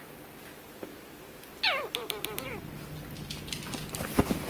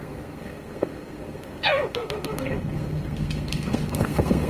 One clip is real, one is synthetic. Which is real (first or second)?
first